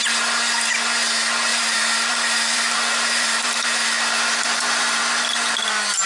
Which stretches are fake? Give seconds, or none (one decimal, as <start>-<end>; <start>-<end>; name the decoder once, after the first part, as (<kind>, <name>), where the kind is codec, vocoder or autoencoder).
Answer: 1.5-5.0 (vocoder, BigVGAN v2)